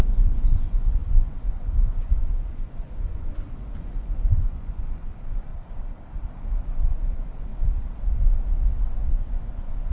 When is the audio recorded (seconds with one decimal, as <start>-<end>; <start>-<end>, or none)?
5.5-6.3; 7.5-9.1